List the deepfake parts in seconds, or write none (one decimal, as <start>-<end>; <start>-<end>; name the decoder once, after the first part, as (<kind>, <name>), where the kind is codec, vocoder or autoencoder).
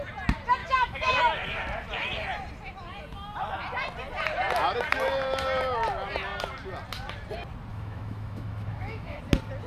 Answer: 0.6-1.2 (autoencoder, DAC-VAE); 7.7-9.2